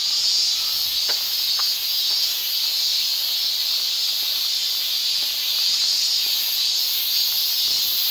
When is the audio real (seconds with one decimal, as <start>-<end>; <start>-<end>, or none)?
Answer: 0.0-8.1